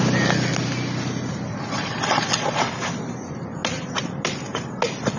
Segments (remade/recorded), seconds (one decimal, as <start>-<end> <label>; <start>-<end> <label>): 0.0-1.5 recorded; 1.5-2.6 remade; 2.6-5.2 recorded